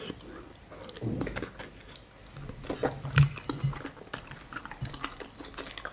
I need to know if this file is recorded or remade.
recorded